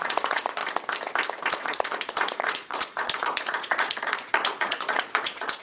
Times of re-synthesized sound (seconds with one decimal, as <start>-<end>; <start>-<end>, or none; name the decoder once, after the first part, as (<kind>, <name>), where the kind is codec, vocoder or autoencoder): 0.0-0.6 (vocoder, Vocos); 1.5-5.6

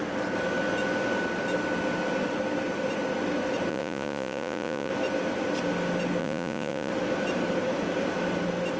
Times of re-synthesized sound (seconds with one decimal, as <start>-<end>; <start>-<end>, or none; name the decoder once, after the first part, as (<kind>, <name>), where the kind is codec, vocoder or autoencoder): 3.7-4.9 (vocoder, Vocos); 6.2-6.9

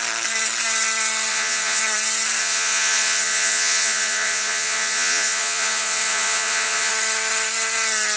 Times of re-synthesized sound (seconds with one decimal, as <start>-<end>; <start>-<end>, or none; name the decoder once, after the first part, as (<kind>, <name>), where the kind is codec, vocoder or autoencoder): 1.3-1.8 (vocoder, Vocos); 2.4-6.9

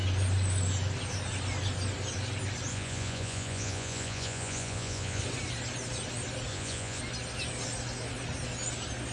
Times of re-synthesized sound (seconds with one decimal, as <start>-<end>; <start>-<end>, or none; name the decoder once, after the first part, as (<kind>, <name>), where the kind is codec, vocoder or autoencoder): 2.7-5.2 (vocoder, Vocos); 6.5-7.0

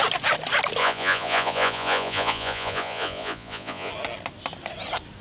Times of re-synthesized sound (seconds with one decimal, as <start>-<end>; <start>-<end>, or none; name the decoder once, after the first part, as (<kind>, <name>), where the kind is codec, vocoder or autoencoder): 0.8-3.9 (vocoder, Vocos)